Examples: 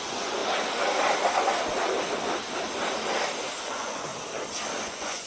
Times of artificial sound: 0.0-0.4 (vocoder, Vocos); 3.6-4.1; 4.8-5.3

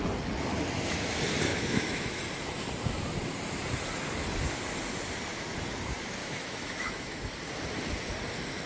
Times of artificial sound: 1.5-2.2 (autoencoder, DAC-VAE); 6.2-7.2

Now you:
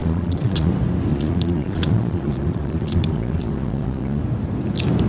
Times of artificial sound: 0.0-0.7 (vocoder, Vocos); 1.1-4.2

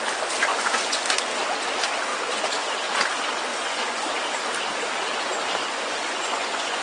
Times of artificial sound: 0.5-1.0 (vocoder, Vocos); 2.1-2.7; 3.5-4.2; 5.6-6.8

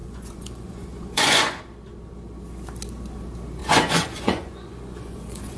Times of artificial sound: 0.0-1.6 (vocoder, Vocos); 3.6-5.6